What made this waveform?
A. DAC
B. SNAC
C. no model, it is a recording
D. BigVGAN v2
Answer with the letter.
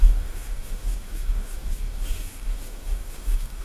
A